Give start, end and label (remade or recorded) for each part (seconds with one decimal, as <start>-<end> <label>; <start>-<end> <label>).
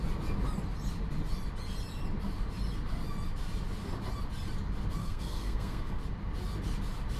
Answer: 0.0-5.0 recorded; 5.0-6.0 remade; 6.0-7.2 recorded